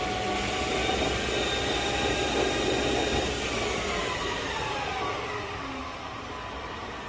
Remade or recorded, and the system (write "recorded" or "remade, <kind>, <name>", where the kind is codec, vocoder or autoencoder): recorded